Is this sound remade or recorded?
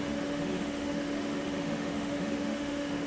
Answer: remade